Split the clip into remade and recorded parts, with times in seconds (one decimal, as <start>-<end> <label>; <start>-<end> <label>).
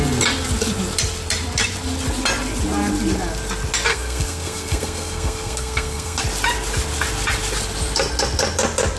0.0-3.9 recorded; 3.9-6.2 remade; 6.2-9.0 recorded